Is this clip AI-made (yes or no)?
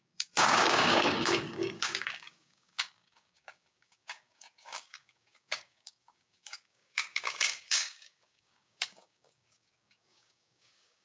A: yes